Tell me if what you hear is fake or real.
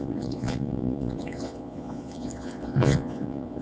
fake